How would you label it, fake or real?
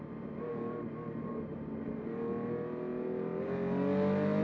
real